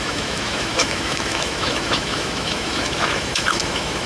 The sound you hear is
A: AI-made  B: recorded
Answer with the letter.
A